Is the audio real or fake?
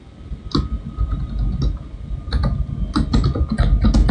real